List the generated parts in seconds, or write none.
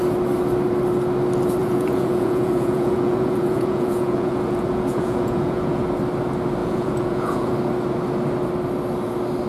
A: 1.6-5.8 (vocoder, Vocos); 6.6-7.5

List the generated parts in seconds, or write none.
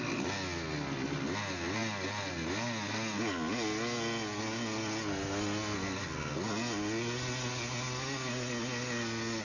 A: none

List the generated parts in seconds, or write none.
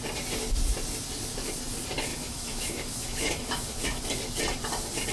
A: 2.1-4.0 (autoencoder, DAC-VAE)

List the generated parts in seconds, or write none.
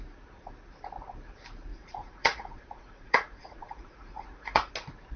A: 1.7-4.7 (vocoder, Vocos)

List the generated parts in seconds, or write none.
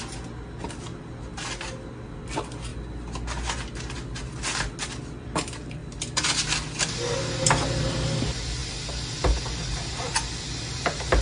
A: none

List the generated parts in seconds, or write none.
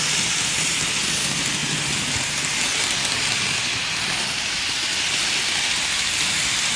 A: none